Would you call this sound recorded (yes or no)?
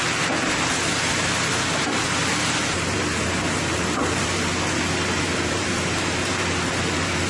no